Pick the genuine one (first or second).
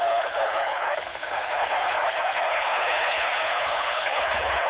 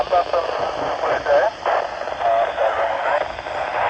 second